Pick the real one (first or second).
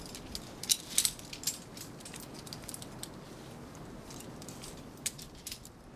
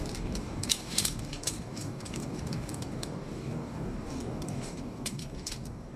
first